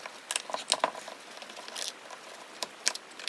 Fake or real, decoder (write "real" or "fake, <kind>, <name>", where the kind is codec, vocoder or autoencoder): real